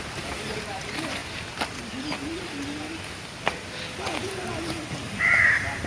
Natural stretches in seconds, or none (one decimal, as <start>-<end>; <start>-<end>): 1.2-4.3